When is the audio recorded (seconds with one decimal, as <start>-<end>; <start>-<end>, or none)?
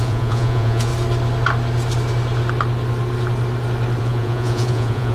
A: 0.9-4.0